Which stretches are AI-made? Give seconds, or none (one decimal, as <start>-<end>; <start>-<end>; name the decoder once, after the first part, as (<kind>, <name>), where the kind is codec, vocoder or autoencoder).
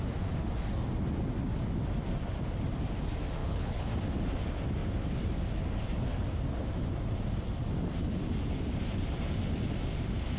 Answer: 3.4-3.9 (codec, HILCodec)